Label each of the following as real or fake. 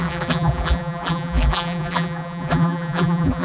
fake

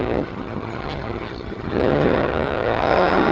fake